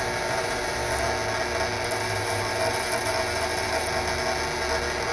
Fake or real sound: real